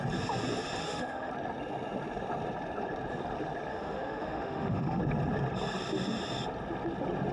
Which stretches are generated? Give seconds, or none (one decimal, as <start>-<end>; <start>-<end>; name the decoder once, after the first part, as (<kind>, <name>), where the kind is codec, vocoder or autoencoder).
0.8-1.3 (autoencoder, DAC-VAE); 3.7-5.0